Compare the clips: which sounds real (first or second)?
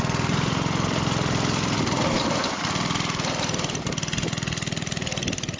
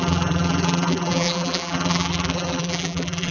first